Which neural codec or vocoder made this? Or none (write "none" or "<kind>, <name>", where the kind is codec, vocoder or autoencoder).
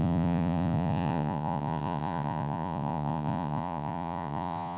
vocoder, Vocos